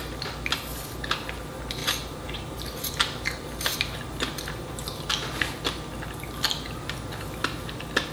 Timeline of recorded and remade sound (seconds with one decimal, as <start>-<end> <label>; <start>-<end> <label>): 0.0-1.8 recorded; 1.8-5.1 remade; 5.1-8.1 recorded